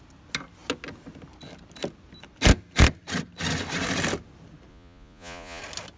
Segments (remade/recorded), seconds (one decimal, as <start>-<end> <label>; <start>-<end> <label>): 0.0-4.7 recorded; 4.7-5.6 remade; 5.6-6.0 recorded